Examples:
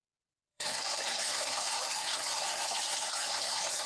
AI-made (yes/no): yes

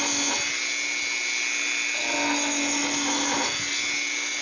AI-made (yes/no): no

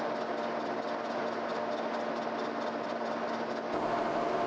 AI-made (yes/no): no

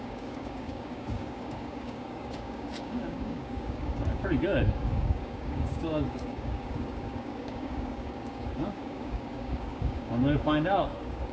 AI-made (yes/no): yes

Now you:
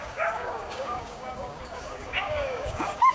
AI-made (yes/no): yes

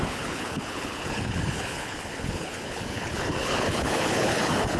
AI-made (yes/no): yes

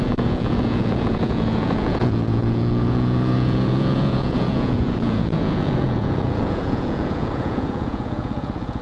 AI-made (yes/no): yes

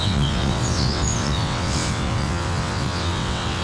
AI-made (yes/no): yes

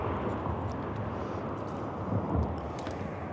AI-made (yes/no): no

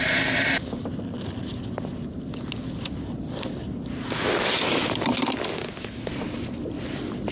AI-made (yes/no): no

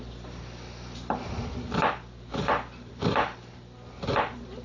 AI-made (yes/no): no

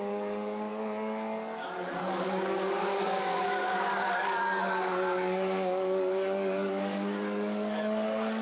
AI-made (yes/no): yes